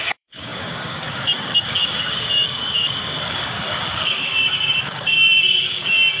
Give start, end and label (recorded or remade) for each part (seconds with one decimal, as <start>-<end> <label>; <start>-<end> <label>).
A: 0.0-6.2 remade

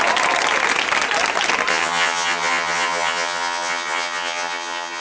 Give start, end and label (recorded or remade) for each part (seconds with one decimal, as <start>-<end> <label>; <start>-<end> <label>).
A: 0.0-1.7 recorded; 1.7-5.0 remade

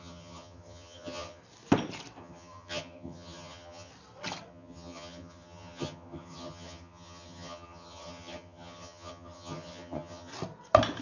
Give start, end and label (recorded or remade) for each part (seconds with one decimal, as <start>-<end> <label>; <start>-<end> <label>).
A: 0.0-1.4 remade; 1.4-2.2 recorded; 2.2-3.9 remade; 3.9-4.5 recorded; 4.5-10.3 remade; 10.3-11.0 recorded

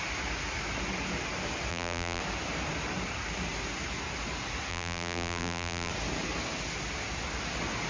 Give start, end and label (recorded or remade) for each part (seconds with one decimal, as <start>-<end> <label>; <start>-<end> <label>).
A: 0.0-1.7 recorded; 1.7-2.2 remade; 2.2-4.7 recorded; 4.7-5.9 remade; 5.9-7.9 recorded